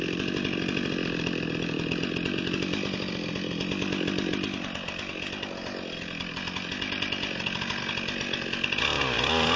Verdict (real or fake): real